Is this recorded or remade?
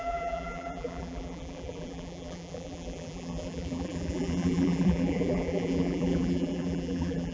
remade